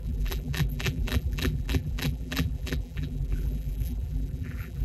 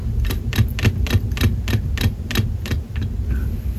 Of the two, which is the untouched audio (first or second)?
second